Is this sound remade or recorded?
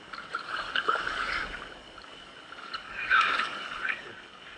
remade